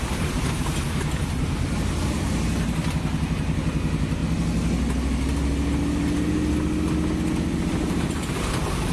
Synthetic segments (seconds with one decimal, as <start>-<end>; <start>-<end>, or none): 0.0-4.2; 7.8-8.9